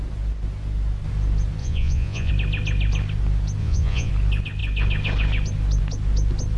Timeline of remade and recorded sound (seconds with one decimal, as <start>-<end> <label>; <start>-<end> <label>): 0.0-1.6 recorded; 1.6-2.3 remade; 2.3-3.6 recorded; 3.6-4.1 remade; 4.1-6.6 recorded